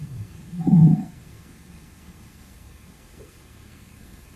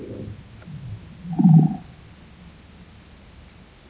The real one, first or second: second